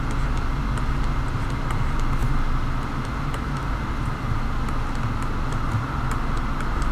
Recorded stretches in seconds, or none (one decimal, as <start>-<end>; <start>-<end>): 0.0-6.9